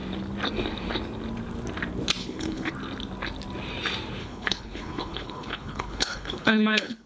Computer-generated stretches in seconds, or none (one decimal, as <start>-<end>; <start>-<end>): 2.2-2.7; 4.2-7.1